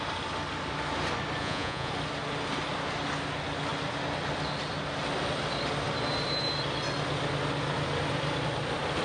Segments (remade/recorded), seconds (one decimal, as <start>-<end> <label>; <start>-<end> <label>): 0.0-1.4 recorded; 1.4-1.9 remade; 1.9-9.0 recorded